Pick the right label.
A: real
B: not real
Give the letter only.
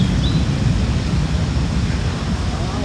A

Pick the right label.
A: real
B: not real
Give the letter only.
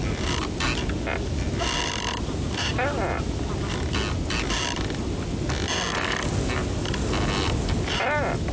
A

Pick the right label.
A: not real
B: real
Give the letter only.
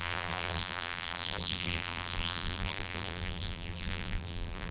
A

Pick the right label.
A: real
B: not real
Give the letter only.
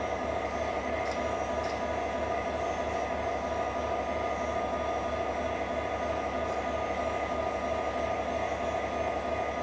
A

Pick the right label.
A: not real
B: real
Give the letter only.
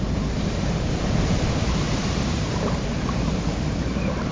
A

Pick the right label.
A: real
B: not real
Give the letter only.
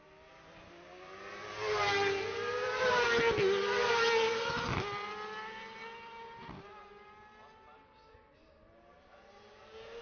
A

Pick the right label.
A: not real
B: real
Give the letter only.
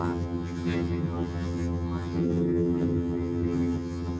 A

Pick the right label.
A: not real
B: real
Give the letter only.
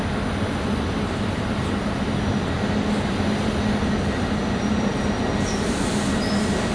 B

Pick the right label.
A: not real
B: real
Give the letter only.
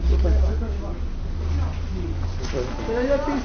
B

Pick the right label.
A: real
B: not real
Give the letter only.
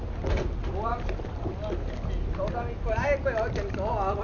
A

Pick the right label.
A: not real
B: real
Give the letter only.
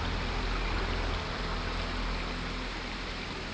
B